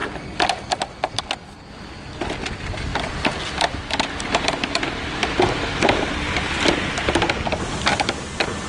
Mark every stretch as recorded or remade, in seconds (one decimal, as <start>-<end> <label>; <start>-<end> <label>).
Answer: 0.0-1.2 remade; 1.2-2.9 recorded; 2.9-7.3 remade; 7.3-8.7 recorded